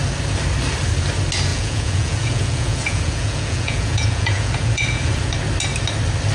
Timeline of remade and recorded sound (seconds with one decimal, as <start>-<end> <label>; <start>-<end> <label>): 0.0-1.5 recorded; 1.5-5.3 remade; 5.3-6.3 recorded